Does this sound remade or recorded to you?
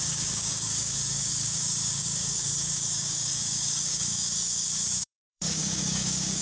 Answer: remade